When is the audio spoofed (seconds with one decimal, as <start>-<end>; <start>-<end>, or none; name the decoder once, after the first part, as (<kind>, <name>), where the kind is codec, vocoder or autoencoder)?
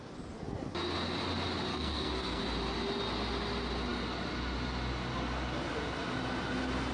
1.7-2.4 (codec, SNAC)